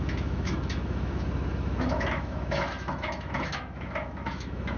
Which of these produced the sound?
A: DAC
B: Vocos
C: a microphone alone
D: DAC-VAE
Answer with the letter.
D